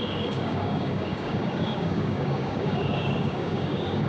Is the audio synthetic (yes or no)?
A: yes